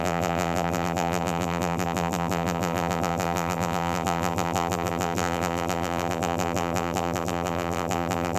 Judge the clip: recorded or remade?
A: remade